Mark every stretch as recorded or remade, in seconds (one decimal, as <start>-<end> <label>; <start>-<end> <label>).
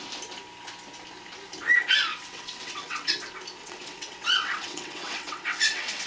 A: 0.0-2.1 recorded; 2.1-3.1 remade; 3.1-3.6 recorded; 3.6-6.1 remade